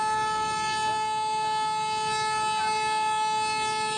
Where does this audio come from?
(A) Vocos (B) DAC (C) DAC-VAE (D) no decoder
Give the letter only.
D